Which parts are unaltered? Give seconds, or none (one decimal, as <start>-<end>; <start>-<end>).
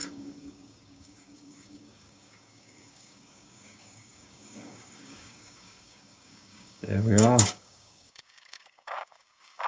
none